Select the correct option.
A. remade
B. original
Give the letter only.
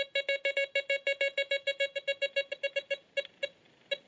B